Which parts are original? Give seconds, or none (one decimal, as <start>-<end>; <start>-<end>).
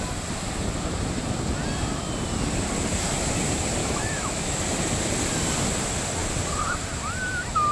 0.0-3.8; 4.6-7.7